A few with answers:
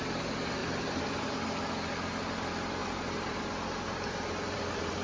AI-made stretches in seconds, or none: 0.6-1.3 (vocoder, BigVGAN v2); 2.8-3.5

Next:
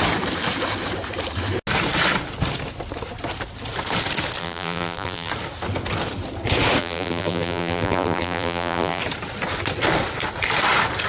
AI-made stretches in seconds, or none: 4.4-5.3 (vocoder, BigVGAN v2); 6.8-9.0

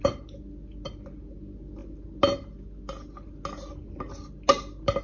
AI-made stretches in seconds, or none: none

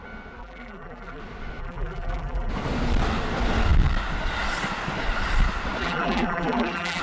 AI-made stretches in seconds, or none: 0.4-1.2 (vocoder, BigVGAN v2); 1.6-2.5; 5.8-7.0